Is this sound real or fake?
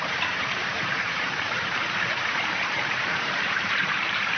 fake